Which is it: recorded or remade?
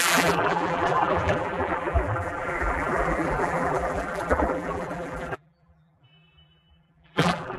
remade